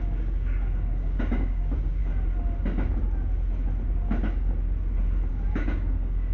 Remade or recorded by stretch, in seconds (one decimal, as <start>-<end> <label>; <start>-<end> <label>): 0.0-2.0 remade; 2.0-5.3 recorded; 5.3-6.3 remade